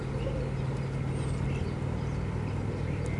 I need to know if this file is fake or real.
real